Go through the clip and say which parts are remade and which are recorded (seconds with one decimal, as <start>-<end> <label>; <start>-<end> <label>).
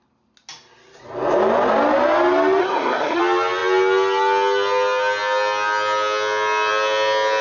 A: 0.0-2.6 recorded; 2.6-3.2 remade; 3.2-7.4 recorded